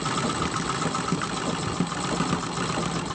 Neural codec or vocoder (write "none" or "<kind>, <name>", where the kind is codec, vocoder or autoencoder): none